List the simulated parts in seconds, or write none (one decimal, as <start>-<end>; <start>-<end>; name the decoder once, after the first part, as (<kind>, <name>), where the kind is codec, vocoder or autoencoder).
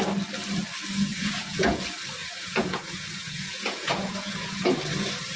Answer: 1.1-1.8 (vocoder, Vocos); 2.2-4.8